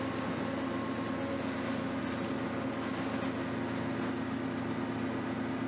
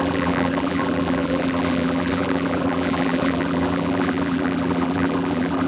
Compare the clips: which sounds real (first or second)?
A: first